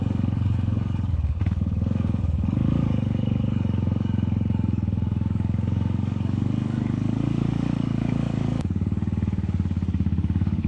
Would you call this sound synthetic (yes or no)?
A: yes